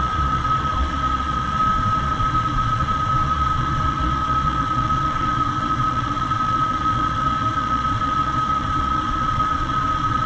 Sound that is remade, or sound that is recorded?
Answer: remade